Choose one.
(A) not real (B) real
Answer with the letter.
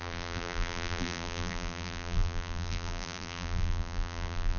A